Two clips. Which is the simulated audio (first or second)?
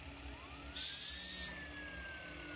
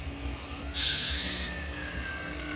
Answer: second